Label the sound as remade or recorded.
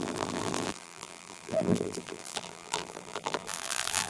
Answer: remade